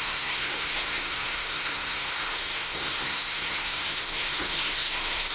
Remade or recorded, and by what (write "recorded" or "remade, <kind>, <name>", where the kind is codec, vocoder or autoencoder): remade, codec, SNAC